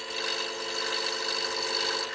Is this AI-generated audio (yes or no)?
no